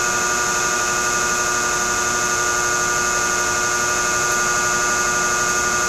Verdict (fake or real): real